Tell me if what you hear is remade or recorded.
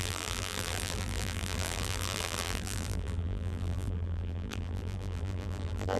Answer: remade